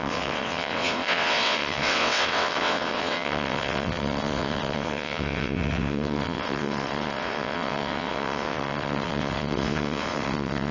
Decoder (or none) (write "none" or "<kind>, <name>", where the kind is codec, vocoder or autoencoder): vocoder, WaveNeXt